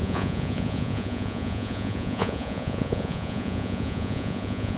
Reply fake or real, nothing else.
fake